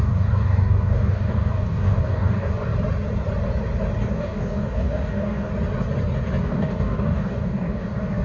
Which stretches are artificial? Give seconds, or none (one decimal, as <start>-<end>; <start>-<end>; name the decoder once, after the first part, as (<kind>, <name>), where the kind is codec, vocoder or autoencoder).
0.0-2.7 (codec, DAC); 4.1-5.5; 6.4-8.2